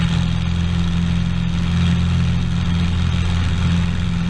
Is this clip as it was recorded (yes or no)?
yes